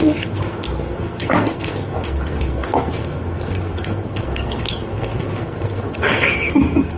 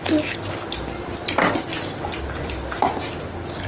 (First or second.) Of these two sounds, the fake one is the first